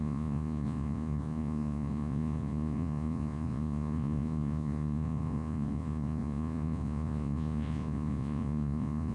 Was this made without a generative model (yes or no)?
no